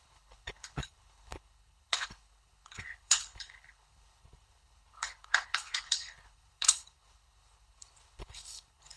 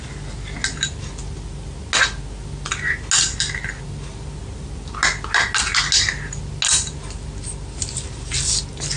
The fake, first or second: first